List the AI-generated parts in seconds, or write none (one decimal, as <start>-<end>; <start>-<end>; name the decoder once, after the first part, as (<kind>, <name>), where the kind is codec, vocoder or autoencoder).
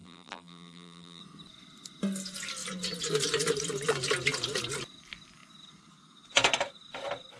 0.0-1.2 (vocoder, BigVGAN v2)